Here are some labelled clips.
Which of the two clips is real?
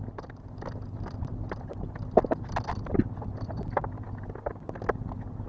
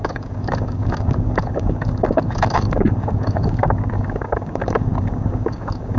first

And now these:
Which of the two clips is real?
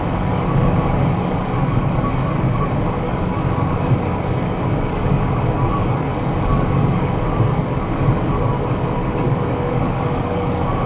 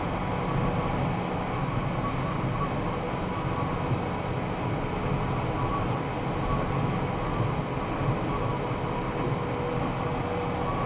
second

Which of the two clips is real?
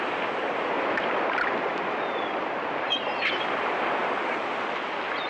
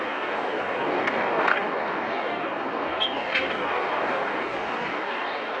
first